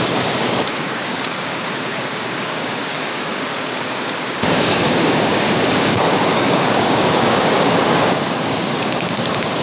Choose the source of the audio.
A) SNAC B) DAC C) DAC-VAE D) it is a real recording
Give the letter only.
B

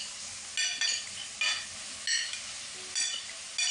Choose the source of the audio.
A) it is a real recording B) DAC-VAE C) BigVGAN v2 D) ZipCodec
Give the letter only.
A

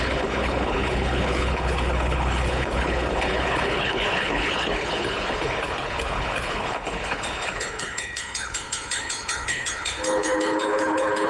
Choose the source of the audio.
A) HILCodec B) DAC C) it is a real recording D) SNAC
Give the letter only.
A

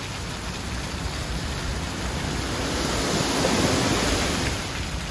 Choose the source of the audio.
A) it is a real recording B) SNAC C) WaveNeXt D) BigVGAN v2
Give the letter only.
A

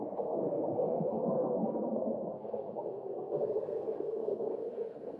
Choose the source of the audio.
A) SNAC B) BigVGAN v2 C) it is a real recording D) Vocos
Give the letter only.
A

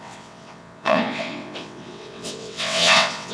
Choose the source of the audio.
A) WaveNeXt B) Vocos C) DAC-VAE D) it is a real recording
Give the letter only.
A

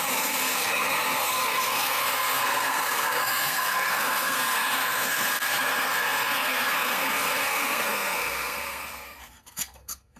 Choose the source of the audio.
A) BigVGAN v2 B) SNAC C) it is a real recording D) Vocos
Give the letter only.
B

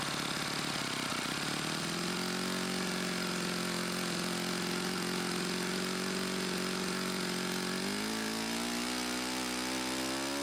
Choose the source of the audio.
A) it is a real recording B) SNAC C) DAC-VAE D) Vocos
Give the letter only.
A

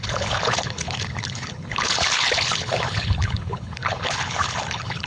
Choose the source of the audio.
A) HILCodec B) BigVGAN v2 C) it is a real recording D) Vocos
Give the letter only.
A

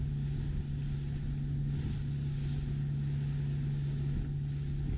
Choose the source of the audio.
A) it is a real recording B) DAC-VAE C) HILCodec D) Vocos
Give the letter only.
A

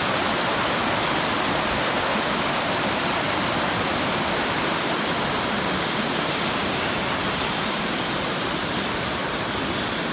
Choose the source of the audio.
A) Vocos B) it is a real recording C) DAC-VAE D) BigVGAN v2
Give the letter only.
B